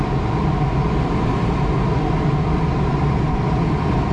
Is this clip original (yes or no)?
yes